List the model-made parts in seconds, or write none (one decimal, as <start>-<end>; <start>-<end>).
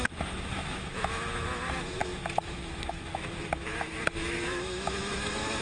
0.0-5.6